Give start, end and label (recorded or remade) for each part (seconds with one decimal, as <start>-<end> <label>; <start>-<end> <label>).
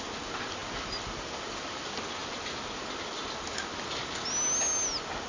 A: 0.0-5.3 recorded